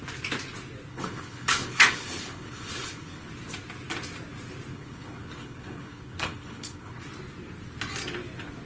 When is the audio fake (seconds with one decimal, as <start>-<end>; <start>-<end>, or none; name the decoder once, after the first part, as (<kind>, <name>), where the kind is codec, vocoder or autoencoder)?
0.9-3.3 (codec, HILCodec); 4.7-7.0